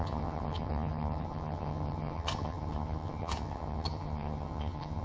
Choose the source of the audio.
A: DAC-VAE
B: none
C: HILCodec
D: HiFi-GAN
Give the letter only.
D